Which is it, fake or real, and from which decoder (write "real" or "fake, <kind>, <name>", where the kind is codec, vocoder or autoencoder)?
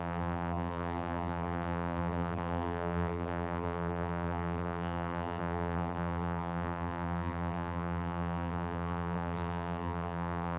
fake, vocoder, BigVGAN v2